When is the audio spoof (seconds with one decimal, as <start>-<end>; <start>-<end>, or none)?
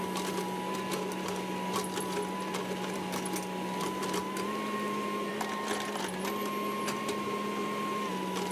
none